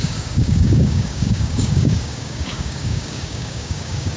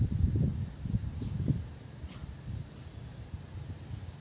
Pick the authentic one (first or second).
second